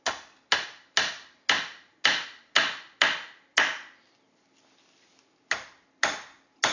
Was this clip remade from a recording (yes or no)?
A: no